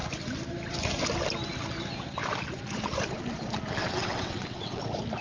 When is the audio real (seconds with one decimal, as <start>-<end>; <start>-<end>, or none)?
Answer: 0.0-3.8; 4.8-5.2